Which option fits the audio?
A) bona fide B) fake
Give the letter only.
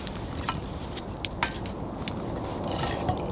A